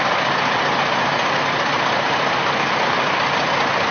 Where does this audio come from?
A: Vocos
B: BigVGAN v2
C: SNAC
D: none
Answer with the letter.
D